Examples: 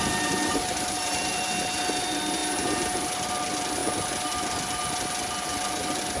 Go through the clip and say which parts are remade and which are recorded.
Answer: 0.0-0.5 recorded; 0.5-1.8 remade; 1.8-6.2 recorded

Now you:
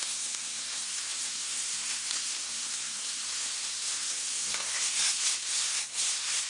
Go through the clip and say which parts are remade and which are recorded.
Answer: 0.0-6.5 remade

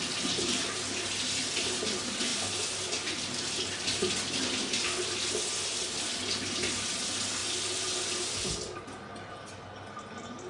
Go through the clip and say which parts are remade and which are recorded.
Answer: 0.0-10.5 recorded

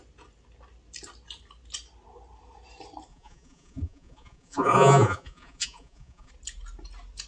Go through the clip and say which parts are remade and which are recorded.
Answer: 0.0-3.1 recorded; 3.1-6.3 remade; 6.3-7.3 recorded